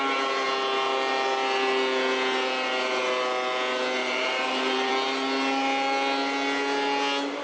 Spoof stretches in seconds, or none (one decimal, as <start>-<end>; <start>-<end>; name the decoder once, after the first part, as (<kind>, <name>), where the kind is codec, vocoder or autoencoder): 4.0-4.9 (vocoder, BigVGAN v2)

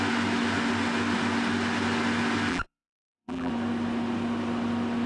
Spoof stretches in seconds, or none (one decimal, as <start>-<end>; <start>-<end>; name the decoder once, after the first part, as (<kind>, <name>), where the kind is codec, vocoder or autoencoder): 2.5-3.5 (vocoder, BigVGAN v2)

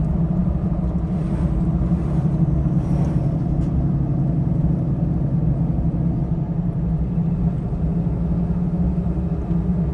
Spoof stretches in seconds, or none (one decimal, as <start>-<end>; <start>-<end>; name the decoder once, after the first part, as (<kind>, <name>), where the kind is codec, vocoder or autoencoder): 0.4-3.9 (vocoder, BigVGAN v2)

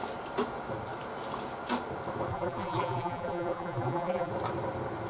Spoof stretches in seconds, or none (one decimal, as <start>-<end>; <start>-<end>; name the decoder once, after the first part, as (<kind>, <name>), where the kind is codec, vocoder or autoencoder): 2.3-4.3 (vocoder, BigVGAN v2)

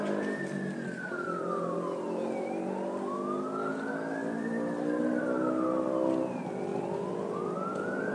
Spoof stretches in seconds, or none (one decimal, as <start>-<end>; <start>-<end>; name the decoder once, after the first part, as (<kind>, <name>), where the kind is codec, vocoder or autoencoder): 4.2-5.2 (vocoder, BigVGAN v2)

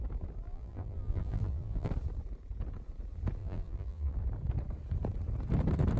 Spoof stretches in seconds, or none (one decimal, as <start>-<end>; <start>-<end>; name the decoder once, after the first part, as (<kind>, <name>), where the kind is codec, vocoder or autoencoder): 0.5-1.9 (vocoder, BigVGAN v2); 3.4-4.2

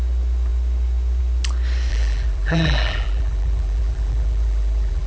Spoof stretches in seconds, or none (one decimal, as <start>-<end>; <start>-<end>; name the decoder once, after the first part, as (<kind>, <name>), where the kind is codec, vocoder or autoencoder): 1.9-5.1 (vocoder, BigVGAN v2)